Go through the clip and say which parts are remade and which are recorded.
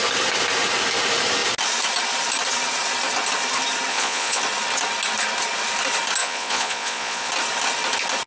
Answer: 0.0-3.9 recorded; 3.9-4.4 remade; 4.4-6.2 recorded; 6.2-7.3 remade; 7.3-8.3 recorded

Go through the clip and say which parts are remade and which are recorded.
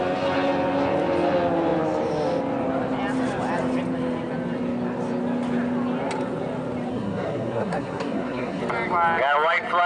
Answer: 0.0-6.9 recorded; 6.9-8.6 remade; 8.6-9.9 recorded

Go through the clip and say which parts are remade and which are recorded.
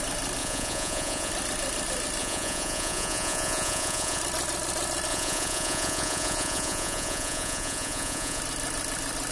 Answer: 0.0-0.4 recorded; 0.4-1.3 remade; 1.3-2.2 recorded; 2.2-4.2 remade; 4.2-5.1 recorded; 5.1-8.4 remade; 8.4-9.3 recorded